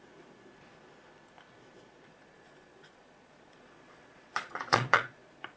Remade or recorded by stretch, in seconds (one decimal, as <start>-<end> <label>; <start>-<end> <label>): 0.0-2.1 recorded; 2.1-5.6 remade